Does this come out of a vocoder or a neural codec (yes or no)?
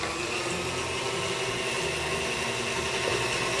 no